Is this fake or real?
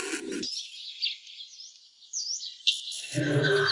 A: real